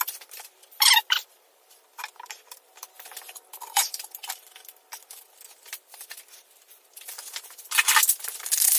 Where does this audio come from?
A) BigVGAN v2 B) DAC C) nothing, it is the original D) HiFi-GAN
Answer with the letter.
A